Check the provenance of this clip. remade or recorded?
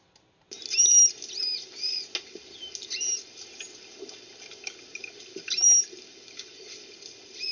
recorded